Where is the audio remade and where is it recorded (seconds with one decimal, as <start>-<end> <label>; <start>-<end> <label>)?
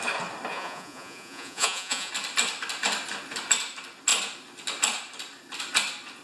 0.0-0.5 recorded; 0.5-2.1 remade; 2.1-6.2 recorded